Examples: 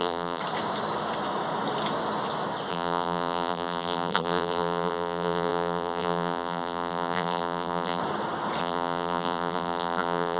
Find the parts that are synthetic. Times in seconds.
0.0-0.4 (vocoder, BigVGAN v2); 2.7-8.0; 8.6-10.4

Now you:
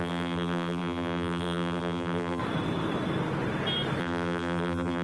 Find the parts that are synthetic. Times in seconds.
0.0-2.4 (vocoder, BigVGAN v2); 4.0-5.0

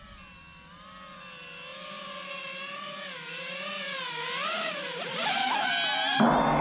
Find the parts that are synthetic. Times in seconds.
1.7-5.7 (vocoder, BigVGAN v2)

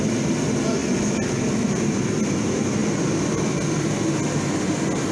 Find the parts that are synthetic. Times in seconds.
0.8-1.8 (vocoder, BigVGAN v2)

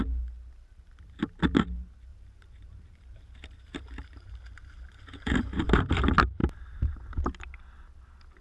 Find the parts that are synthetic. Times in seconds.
2.1-5.9 (vocoder, BigVGAN v2); 6.4-7.0